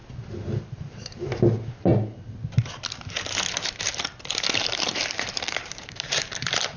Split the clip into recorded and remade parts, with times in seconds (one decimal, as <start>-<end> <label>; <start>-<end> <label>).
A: 0.0-0.6 recorded; 0.6-1.9 remade; 1.9-4.6 recorded; 4.6-6.8 remade